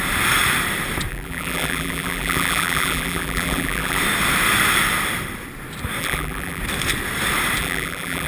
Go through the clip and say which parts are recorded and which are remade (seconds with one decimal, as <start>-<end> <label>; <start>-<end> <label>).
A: 0.0-1.1 recorded; 1.1-4.0 remade; 4.0-6.0 recorded; 6.0-6.6 remade; 6.6-7.6 recorded; 7.6-8.3 remade